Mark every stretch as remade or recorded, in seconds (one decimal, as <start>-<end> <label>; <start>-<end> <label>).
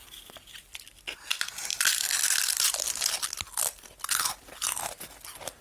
0.0-5.6 recorded